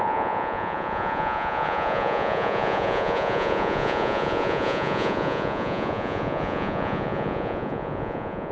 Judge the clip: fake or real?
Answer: fake